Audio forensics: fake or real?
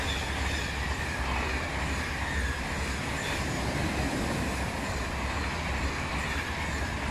real